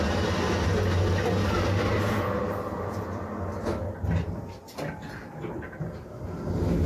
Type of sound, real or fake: real